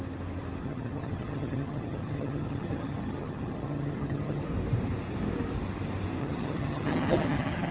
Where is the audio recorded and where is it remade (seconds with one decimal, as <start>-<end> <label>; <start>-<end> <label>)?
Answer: 0.0-0.6 recorded; 0.6-4.4 remade; 4.4-6.2 recorded; 6.2-7.7 remade

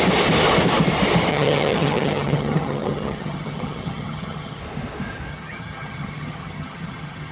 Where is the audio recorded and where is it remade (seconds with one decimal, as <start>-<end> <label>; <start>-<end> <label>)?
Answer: 0.0-1.3 recorded; 1.3-4.6 remade; 4.6-5.3 recorded; 5.3-7.3 remade

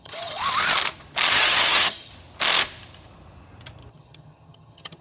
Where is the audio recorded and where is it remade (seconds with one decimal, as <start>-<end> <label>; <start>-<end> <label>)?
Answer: 0.0-0.4 remade; 0.4-1.3 recorded; 1.3-2.1 remade; 2.1-3.9 recorded; 3.9-5.0 remade